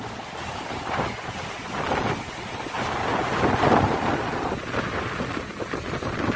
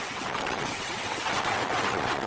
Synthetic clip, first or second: second